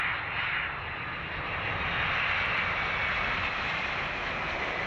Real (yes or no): yes